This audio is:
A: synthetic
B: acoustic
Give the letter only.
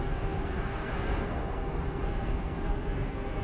A